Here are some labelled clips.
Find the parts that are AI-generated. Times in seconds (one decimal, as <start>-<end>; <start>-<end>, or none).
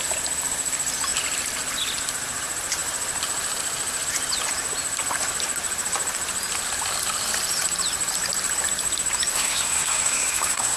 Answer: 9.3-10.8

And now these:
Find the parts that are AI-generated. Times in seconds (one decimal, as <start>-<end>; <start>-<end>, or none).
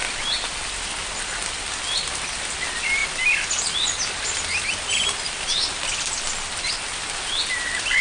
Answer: none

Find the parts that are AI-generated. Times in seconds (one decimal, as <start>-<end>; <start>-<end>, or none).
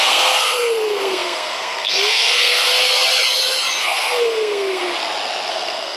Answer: 0.0-2.7; 3.8-4.8; 5.5-6.0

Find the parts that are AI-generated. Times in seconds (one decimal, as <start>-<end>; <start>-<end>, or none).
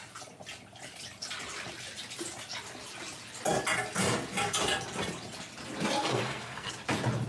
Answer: 6.0-6.7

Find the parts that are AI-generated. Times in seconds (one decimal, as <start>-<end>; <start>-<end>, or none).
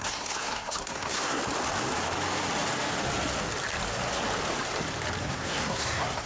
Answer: 0.0-1.4; 5.2-6.3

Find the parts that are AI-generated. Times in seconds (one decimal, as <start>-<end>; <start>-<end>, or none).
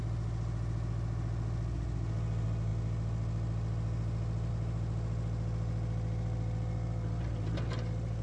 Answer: none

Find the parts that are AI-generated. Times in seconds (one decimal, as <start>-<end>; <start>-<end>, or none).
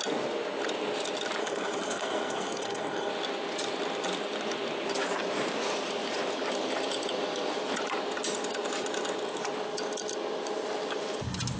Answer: 1.4-3.1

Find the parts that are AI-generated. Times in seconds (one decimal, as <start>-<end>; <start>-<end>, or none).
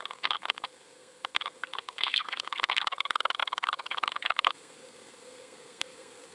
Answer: 0.0-6.3